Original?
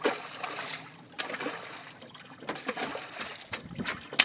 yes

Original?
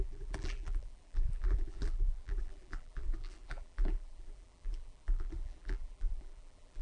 no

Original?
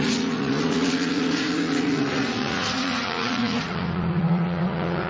no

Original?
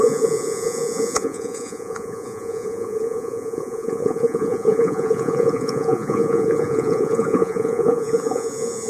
no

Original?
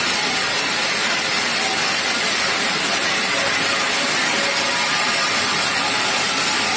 no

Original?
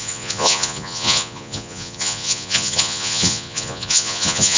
no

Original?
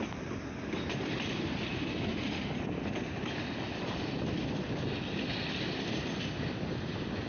yes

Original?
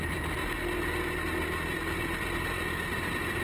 yes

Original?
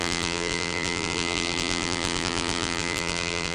no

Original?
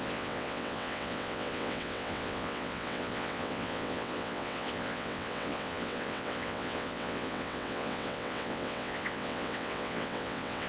no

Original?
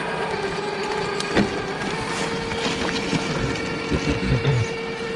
yes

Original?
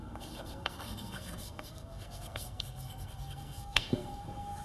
no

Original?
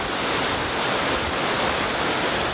yes